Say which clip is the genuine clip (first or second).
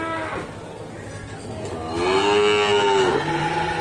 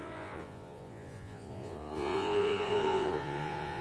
first